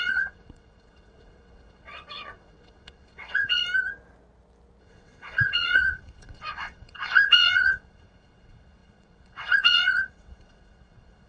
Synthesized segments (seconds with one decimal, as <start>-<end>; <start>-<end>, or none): 0.0-3.6; 4.8-11.3